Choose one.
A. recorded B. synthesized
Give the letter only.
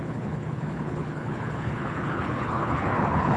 B